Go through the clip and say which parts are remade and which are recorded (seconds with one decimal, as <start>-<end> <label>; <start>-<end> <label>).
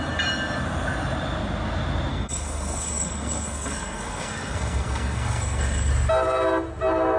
0.0-2.1 recorded; 2.1-5.9 remade; 5.9-7.2 recorded